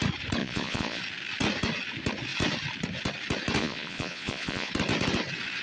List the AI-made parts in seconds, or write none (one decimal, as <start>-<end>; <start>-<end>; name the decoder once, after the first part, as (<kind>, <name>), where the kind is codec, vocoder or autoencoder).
0.4-1.0 (vocoder, Vocos); 3.6-4.7